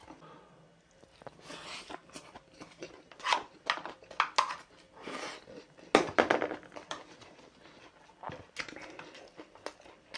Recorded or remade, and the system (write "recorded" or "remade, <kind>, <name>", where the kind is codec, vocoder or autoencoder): recorded